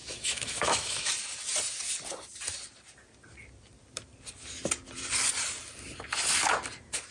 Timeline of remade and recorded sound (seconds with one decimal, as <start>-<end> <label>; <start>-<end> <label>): 0.0-1.1 remade; 1.1-7.1 recorded